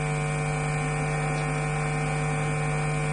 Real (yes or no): yes